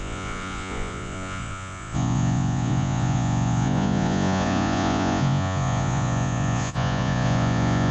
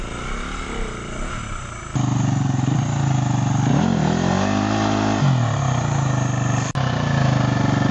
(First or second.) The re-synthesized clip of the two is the first